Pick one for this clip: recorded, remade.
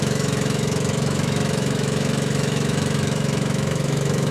remade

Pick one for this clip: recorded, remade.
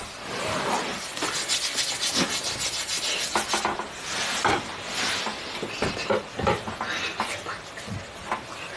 recorded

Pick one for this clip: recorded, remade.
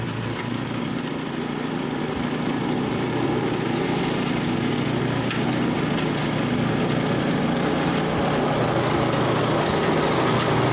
recorded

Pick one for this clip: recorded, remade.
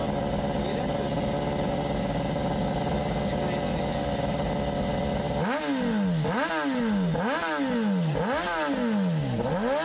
recorded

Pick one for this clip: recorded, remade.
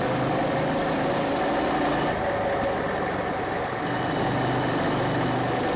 recorded